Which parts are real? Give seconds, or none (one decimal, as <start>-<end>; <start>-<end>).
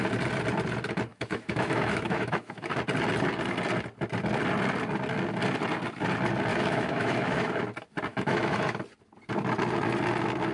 0.0-1.1; 2.7-6.5; 7.6-8.1; 8.8-10.5